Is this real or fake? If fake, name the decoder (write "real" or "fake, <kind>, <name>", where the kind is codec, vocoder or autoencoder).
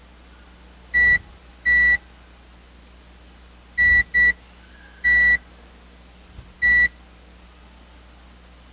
real